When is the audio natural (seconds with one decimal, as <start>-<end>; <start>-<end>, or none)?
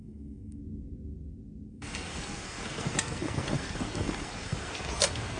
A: 0.6-1.7